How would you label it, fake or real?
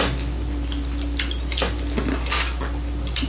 real